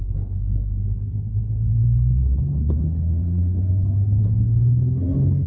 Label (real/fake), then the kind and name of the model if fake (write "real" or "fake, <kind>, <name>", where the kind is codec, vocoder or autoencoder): fake, codec, HILCodec